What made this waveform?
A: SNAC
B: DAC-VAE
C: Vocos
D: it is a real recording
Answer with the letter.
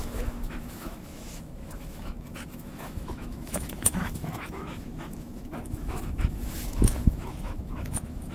B